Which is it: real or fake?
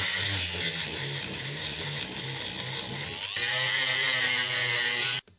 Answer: real